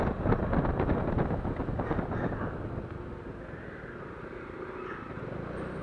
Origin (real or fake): real